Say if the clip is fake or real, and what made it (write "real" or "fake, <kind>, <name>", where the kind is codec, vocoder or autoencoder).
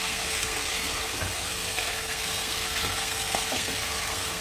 fake, codec, SNAC